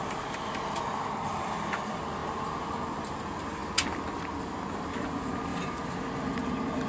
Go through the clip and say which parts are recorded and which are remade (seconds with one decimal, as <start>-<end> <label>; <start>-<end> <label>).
0.0-5.5 recorded; 5.5-6.0 remade; 6.0-6.9 recorded